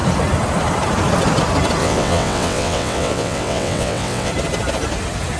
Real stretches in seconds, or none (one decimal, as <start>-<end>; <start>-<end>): 0.0-1.8; 4.3-5.4